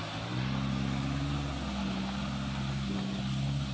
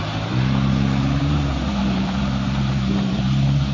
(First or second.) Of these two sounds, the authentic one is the first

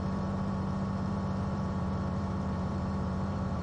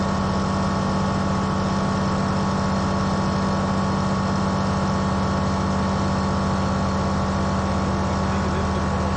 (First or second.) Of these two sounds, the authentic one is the second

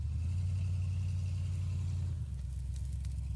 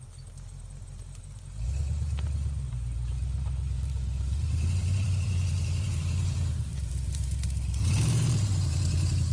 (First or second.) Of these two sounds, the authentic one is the first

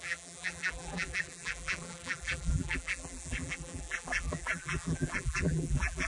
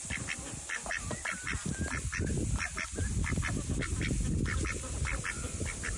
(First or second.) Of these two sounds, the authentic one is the second